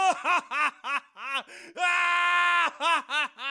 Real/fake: real